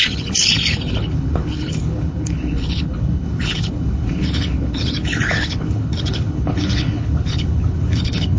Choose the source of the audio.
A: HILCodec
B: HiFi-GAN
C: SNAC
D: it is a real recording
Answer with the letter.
A